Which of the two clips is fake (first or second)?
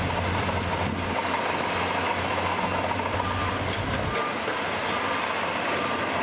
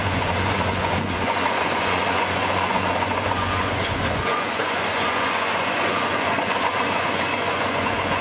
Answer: second